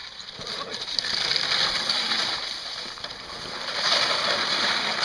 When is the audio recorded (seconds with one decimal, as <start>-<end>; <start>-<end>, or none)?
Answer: 0.0-5.0